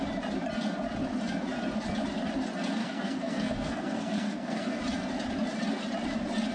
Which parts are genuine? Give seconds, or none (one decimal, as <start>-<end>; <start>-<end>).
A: 0.0-2.8; 4.8-6.5